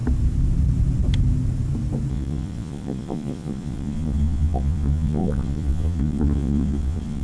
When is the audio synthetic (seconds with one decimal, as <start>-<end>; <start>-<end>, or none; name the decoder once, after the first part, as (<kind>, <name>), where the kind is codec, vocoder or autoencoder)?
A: 2.1-7.2 (vocoder, Vocos)